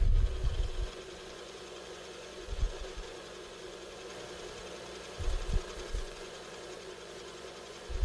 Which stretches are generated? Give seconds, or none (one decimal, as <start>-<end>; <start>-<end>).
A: 0.0-4.1; 5.9-8.0